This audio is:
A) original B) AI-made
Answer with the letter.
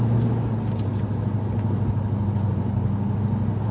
A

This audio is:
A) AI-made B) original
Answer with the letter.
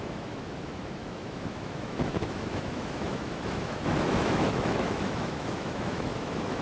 A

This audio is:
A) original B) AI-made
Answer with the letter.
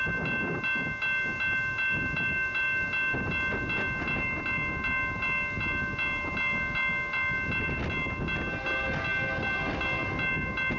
A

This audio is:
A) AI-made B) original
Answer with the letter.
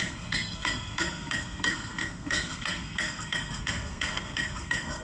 A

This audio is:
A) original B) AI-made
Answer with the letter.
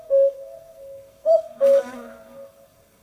B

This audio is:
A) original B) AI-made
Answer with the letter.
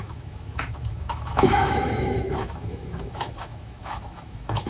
B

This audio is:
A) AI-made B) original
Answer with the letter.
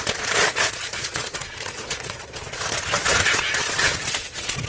A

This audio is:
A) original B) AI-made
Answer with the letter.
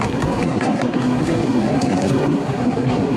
B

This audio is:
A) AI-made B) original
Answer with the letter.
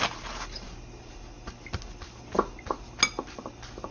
B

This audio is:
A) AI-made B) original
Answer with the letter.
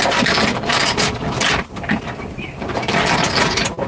B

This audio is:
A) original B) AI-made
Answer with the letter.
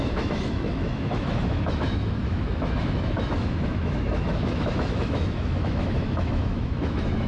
B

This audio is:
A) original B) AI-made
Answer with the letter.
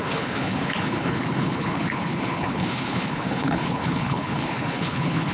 B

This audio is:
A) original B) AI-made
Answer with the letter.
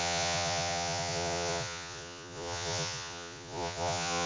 B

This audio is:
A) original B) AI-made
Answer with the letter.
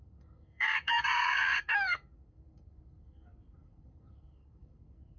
B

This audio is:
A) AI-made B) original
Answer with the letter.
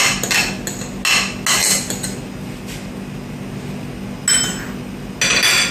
B